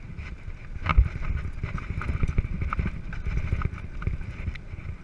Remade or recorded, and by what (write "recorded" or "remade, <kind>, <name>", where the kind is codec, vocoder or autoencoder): recorded